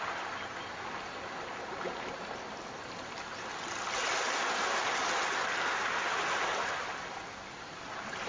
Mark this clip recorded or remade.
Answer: recorded